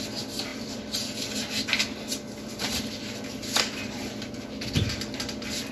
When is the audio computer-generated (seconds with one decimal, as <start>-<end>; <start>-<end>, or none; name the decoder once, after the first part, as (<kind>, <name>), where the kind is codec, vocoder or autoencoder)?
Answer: none